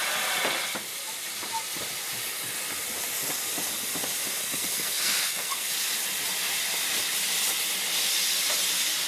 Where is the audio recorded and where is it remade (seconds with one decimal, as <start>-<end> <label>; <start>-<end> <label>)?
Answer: 0.0-4.4 recorded; 4.4-5.7 remade; 5.7-9.1 recorded